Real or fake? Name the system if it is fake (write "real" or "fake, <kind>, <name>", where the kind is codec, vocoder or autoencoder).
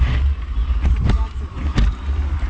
real